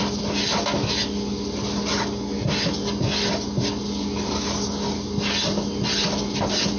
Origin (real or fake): real